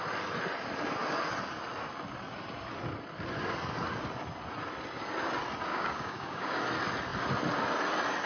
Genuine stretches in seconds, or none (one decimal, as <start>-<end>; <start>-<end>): 0.0-5.7; 6.6-8.3